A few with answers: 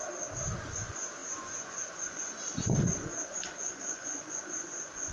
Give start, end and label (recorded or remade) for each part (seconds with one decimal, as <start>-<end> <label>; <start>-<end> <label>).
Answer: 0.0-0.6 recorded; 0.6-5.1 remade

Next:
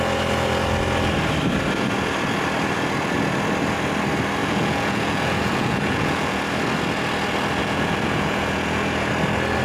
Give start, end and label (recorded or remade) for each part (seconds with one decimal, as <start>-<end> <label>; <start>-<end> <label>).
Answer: 0.0-4.4 recorded; 4.4-6.4 remade; 6.4-7.6 recorded; 7.6-9.1 remade; 9.1-9.6 recorded

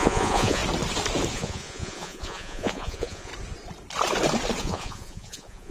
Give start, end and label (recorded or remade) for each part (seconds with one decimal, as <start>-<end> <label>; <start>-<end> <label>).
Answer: 0.0-0.6 remade; 0.6-1.3 recorded; 1.3-3.3 remade; 3.3-4.6 recorded; 4.6-5.7 remade

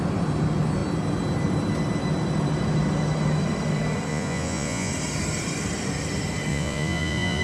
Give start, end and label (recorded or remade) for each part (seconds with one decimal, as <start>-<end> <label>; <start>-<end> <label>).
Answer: 0.0-4.1 recorded; 4.1-4.9 remade; 4.9-6.5 recorded; 6.5-7.4 remade

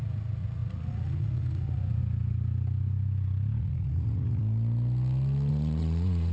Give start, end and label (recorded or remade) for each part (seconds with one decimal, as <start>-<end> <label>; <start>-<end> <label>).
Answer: 0.0-2.0 remade; 2.0-3.6 recorded; 3.6-4.4 remade; 4.4-5.5 recorded; 5.5-6.3 remade